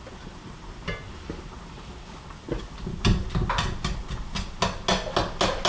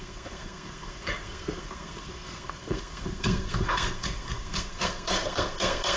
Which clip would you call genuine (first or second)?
first